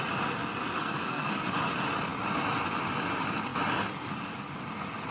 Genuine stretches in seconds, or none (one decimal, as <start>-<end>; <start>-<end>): 0.0-0.8; 1.4-5.1